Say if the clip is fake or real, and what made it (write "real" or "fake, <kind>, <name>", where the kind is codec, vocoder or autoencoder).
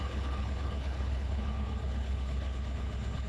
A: fake, codec, HILCodec